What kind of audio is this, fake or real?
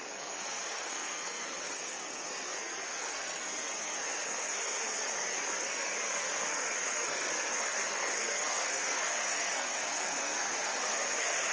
fake